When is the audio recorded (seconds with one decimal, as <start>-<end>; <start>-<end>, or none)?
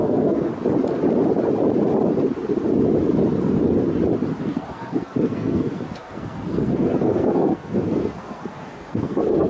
0.5-4.4